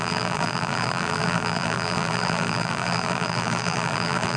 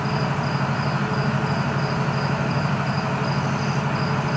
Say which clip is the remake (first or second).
first